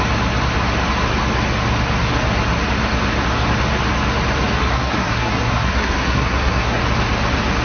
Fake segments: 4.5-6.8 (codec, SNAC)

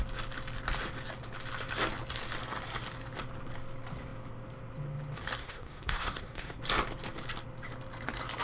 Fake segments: 5.4-6.6 (codec, SNAC)